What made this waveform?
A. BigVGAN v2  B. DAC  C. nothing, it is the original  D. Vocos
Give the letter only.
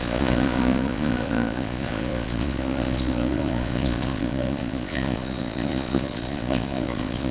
D